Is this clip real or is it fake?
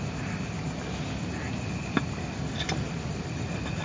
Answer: real